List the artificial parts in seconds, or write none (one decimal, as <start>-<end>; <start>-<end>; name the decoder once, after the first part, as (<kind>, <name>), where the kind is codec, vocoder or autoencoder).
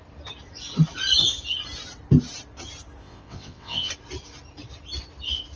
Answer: 3.0-3.9 (vocoder, WaveNeXt)